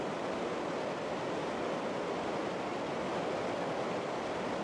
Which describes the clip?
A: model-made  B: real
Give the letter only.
B